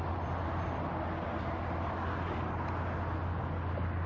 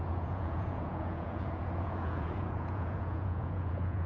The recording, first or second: first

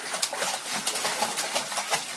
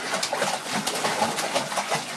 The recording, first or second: first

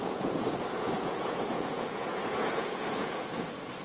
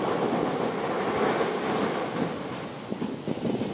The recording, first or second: second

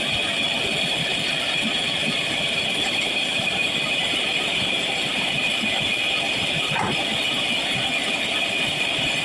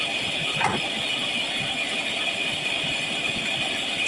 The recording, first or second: second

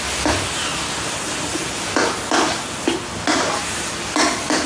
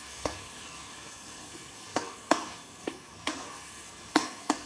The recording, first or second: first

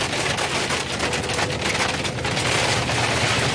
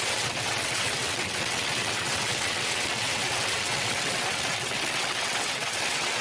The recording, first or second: first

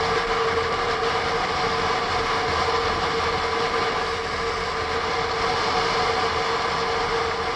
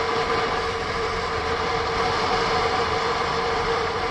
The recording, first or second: first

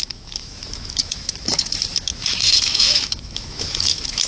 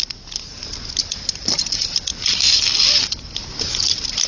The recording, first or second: second